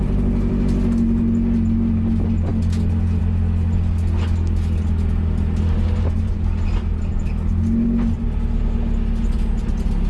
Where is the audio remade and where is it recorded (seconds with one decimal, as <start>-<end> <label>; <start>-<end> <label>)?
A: 0.0-10.1 recorded